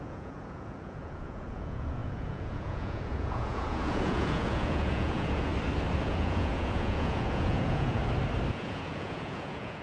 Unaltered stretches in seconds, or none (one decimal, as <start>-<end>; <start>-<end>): 5.5-6.0; 8.0-8.5